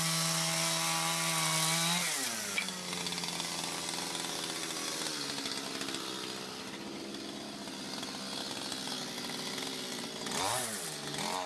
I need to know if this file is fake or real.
real